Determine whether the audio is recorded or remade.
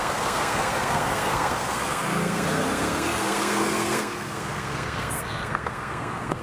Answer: remade